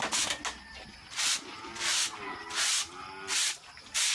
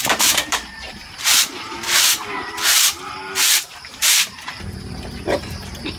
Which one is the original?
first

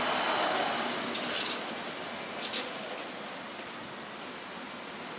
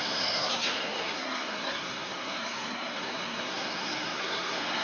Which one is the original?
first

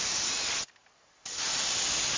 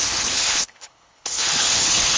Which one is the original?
first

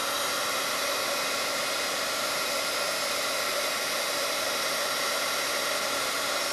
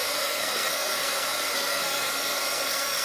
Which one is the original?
first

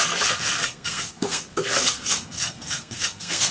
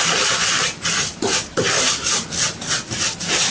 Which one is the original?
second